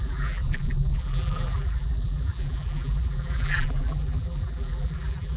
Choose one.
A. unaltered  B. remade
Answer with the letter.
B